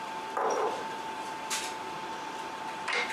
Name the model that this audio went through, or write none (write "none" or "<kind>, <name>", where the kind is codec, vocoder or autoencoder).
vocoder, BigVGAN v2